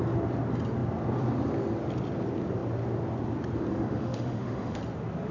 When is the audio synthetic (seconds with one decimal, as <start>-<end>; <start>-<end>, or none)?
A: 3.7-4.8